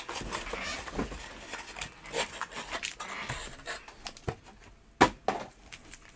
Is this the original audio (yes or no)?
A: yes